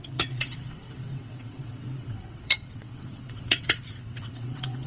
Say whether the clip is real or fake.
fake